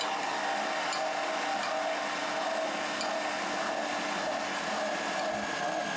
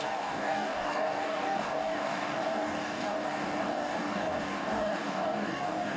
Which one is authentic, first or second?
first